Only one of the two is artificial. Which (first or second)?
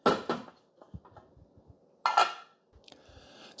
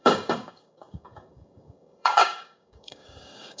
second